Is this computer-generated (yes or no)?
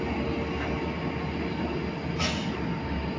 no